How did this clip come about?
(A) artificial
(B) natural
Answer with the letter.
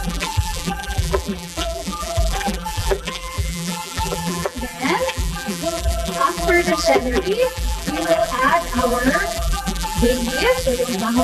A